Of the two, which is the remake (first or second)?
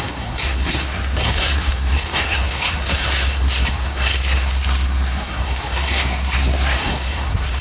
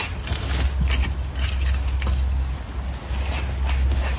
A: first